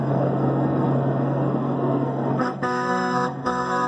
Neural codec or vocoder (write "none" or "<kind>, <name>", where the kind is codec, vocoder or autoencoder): codec, SNAC